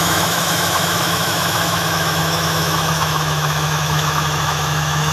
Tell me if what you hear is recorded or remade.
remade